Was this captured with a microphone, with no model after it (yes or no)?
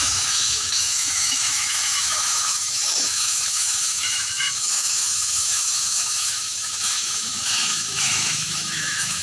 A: no